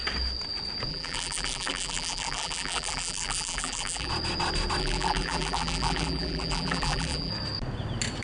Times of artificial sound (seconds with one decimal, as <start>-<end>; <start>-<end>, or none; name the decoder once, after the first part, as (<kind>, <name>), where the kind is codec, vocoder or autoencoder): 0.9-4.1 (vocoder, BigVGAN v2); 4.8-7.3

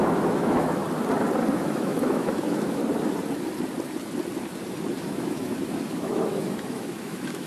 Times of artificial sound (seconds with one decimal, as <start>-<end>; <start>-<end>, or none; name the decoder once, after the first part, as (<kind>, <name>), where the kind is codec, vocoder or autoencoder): 0.0-0.8 (autoencoder, DAC-VAE); 1.5-2.8; 5.0-7.5

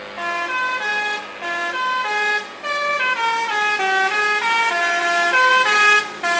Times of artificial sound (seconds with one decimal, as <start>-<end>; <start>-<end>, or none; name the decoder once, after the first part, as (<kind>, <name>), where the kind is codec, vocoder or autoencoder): 5.5-6.0 (vocoder, BigVGAN v2)

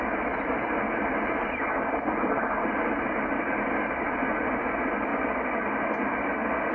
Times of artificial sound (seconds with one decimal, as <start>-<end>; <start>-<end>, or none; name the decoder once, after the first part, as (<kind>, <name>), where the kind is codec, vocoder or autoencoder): 1.4-4.6 (vocoder, BigVGAN v2); 5.1-5.8

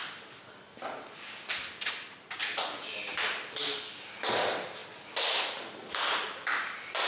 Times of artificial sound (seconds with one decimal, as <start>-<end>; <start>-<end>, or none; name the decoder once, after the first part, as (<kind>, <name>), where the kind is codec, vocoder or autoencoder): none

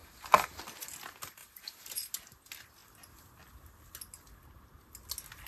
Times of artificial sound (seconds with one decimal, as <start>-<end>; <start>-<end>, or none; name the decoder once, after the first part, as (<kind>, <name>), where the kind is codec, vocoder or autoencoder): 0.0-0.6 (vocoder, BigVGAN v2); 1.4-2.1